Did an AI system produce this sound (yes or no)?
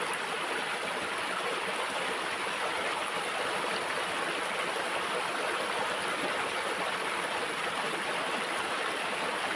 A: no